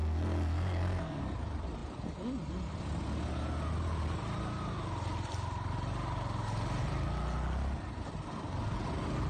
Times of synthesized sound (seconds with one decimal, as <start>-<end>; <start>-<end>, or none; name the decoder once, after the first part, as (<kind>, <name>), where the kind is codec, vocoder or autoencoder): 0.0-1.2 (codec, SNAC)